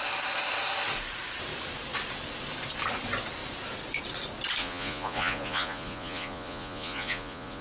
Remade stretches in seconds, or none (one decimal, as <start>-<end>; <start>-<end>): 4.6-7.6